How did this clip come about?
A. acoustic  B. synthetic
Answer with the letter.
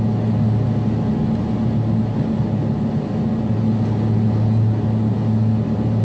A